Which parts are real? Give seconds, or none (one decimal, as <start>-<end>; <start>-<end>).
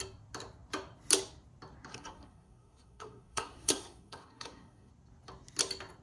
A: 0.0-1.9; 4.9-6.0